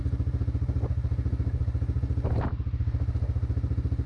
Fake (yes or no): no